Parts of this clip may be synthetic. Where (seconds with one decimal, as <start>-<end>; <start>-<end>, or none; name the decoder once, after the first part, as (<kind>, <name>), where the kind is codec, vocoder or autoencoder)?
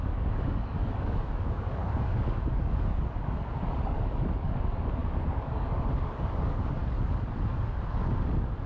0.0-8.7 (codec, DAC)